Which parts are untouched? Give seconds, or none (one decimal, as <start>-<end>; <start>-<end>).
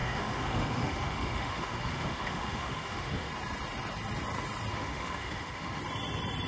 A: 3.3-4.7; 5.8-6.5